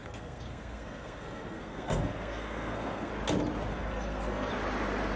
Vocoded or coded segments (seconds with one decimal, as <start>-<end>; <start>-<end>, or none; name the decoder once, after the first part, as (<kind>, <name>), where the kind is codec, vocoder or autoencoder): 0.0-3.1 (codec, SNAC); 3.7-4.5